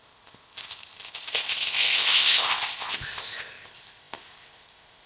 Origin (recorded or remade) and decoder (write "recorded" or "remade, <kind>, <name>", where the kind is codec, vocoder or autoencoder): remade, codec, ZipCodec